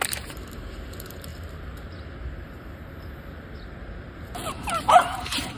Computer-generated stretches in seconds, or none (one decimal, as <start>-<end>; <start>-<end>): 0.0-1.3; 4.5-5.6